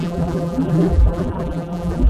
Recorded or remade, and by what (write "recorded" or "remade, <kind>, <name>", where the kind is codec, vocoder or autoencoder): remade, vocoder, BigVGAN v2